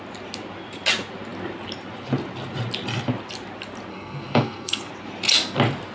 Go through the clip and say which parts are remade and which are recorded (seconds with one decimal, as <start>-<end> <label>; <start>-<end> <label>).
0.0-3.9 recorded; 3.9-4.9 remade; 4.9-5.9 recorded